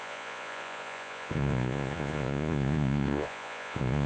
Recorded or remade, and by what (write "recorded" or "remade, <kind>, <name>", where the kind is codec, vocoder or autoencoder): remade, vocoder, Vocos